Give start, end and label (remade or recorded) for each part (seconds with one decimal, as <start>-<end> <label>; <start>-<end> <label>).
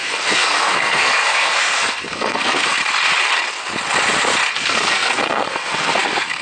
0.0-2.8 remade; 2.8-4.5 recorded; 4.5-6.4 remade